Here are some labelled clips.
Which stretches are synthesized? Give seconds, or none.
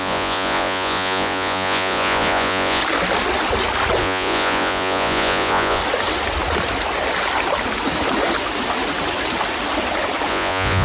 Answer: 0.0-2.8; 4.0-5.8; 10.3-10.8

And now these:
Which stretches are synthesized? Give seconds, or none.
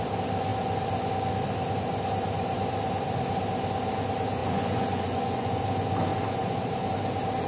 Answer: 4.4-5.6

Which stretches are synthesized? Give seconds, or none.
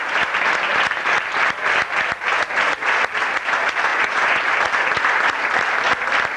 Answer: 3.9-4.5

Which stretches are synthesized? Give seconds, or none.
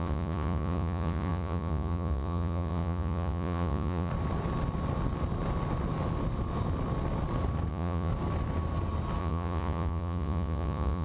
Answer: 0.0-4.1; 7.7-8.1; 9.2-11.0